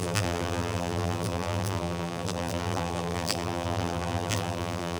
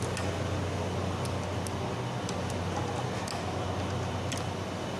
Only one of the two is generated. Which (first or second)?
first